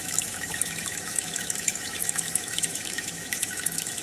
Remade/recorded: remade